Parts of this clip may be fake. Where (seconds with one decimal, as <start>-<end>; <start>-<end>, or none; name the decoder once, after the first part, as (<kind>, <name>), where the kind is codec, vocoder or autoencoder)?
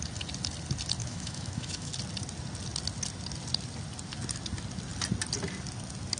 1.0-1.9 (autoencoder, DAC-VAE)